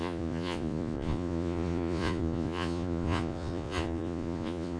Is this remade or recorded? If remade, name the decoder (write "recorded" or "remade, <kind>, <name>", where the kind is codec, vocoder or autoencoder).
remade, vocoder, Vocos